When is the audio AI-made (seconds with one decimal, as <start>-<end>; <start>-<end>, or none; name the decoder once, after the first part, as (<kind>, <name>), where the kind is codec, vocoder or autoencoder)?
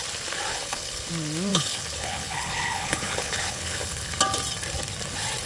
0.5-1.1 (codec, HILCodec); 1.5-4.2